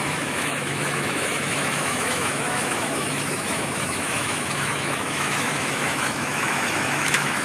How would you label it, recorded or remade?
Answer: remade